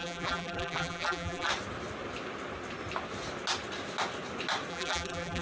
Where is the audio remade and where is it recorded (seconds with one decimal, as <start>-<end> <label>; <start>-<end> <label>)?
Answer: 0.0-1.5 remade; 1.5-4.7 recorded; 4.7-5.4 remade